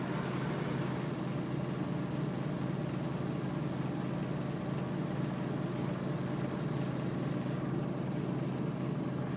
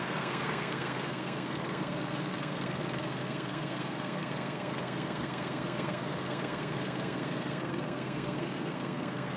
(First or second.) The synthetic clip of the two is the second